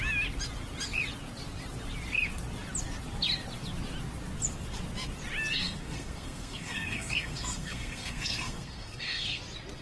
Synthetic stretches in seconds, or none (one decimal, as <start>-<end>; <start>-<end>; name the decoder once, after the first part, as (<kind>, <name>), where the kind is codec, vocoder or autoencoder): 5.5-9.4 (codec, SNAC)